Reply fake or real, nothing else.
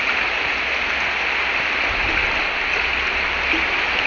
real